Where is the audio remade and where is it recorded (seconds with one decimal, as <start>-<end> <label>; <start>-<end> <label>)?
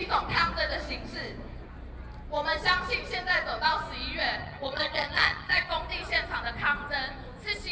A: 0.0-4.4 recorded; 4.4-5.7 remade; 5.7-7.7 recorded